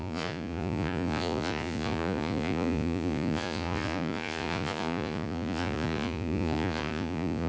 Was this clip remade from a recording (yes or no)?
yes